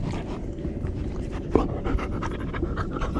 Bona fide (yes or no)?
no